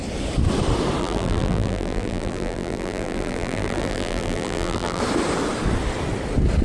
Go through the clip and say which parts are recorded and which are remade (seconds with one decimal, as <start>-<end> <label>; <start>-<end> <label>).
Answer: 0.0-1.0 recorded; 1.0-5.0 remade; 5.0-6.6 recorded